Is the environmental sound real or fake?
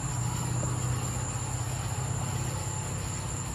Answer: real